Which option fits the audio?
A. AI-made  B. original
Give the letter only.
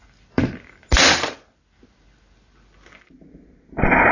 B